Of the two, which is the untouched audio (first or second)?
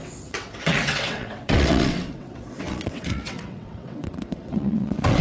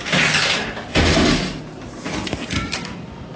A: second